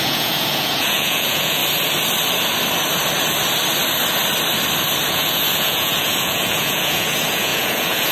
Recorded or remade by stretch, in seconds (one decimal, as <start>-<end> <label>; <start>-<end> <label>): 0.0-1.6 remade; 1.6-5.1 recorded; 5.1-8.1 remade

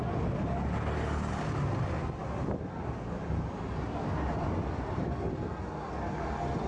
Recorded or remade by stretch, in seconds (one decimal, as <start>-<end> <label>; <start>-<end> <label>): 0.0-6.7 recorded

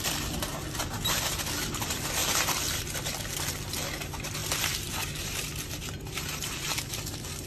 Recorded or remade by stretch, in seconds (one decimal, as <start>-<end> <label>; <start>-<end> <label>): 0.0-4.4 recorded; 4.4-6.9 remade; 6.9-7.5 recorded

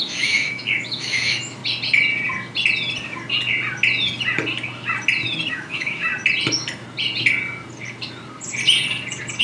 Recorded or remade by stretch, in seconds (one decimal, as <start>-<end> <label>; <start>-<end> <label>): 0.0-1.6 remade; 1.6-5.5 recorded; 5.5-6.1 remade; 6.1-9.4 recorded

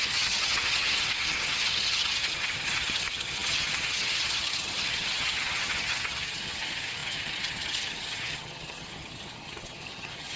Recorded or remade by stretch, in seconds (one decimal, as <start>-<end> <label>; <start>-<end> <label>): 0.0-10.4 remade

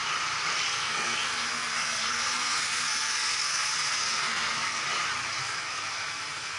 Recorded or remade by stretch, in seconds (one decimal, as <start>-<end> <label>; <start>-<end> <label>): 0.0-0.7 recorded; 0.7-4.8 remade; 4.8-5.4 recorded; 5.4-6.6 remade